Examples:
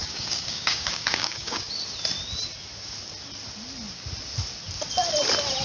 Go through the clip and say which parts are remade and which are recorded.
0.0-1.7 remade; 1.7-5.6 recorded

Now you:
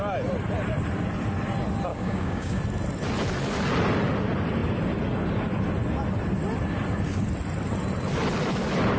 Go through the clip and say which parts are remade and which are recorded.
0.0-1.9 recorded; 1.9-2.6 remade; 2.6-9.0 recorded

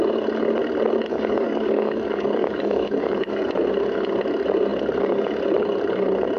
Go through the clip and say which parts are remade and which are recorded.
0.0-1.1 recorded; 1.1-3.5 remade; 3.5-6.4 recorded